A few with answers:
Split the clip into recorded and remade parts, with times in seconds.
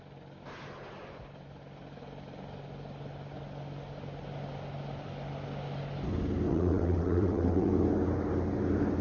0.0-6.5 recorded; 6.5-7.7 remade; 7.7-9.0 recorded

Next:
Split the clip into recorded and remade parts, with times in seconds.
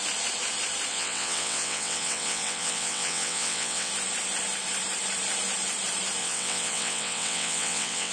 0.0-0.9 recorded; 0.9-3.9 remade; 3.9-6.2 recorded; 6.2-8.1 remade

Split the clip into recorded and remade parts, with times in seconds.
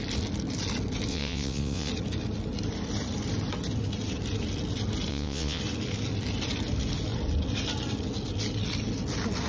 0.0-1.1 recorded; 1.1-1.9 remade; 1.9-5.1 recorded; 5.1-5.6 remade; 5.6-9.5 recorded